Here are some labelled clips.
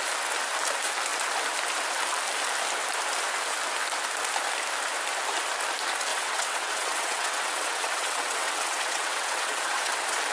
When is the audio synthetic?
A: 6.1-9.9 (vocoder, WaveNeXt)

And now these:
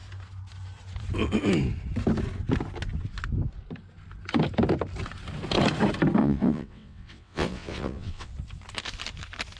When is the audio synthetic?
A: 6.2-8.3 (vocoder, WaveNeXt)